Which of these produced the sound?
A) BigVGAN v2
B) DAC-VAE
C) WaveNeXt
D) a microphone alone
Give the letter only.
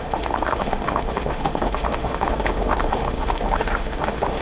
B